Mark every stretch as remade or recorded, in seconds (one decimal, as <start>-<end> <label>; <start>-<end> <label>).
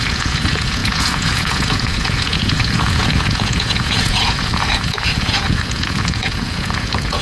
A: 0.0-7.2 remade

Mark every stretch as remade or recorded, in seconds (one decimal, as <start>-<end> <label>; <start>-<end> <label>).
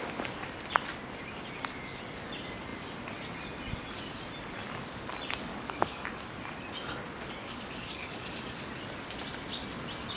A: 0.0-5.5 recorded; 5.5-6.2 remade; 6.2-7.4 recorded; 7.4-8.7 remade; 8.7-10.2 recorded